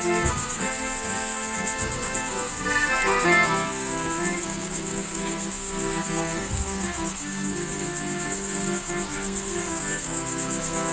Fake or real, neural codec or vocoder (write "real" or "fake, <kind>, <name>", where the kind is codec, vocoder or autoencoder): fake, codec, SNAC